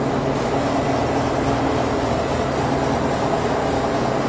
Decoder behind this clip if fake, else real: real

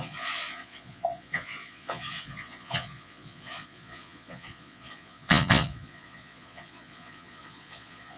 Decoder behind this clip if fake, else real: fake, vocoder, Vocos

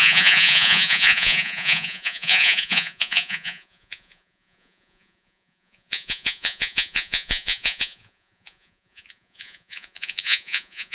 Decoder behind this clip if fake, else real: fake, vocoder, Vocos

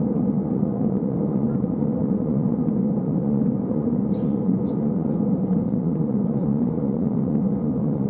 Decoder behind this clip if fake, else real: fake, vocoder, Vocos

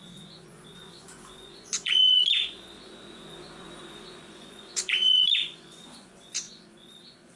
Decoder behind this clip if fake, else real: fake, vocoder, Vocos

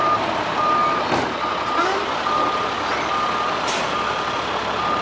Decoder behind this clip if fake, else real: real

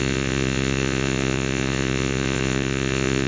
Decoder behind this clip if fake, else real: fake, vocoder, Vocos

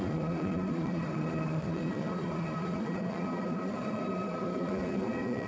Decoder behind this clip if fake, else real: fake, vocoder, Vocos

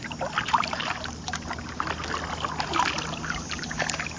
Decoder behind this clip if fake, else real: real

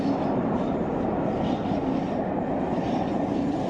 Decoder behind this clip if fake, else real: real